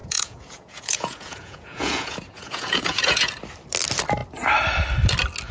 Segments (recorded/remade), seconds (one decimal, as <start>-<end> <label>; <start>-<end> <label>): 0.0-3.3 remade; 3.3-5.5 recorded